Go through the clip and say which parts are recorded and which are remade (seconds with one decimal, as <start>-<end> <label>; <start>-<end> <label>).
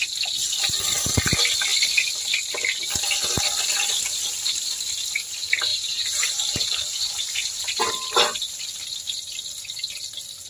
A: 0.0-5.7 recorded; 5.7-7.9 remade; 7.9-10.5 recorded